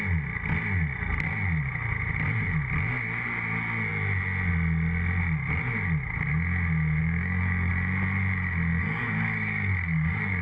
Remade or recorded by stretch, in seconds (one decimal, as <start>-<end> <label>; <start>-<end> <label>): 0.0-7.0 recorded; 7.0-7.7 remade; 7.7-8.8 recorded; 8.8-10.4 remade